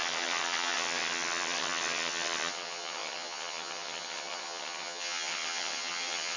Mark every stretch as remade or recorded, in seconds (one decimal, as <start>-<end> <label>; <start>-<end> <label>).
0.0-6.4 remade